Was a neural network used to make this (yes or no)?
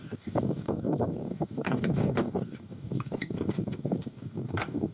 yes